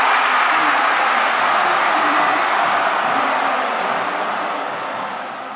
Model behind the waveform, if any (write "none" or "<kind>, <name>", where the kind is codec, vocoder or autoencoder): none